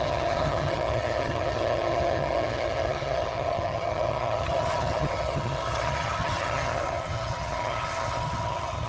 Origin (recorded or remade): remade